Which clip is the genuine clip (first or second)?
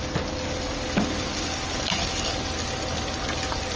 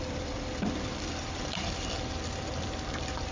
first